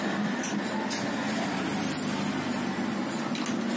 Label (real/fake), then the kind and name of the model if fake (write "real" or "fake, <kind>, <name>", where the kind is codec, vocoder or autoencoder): real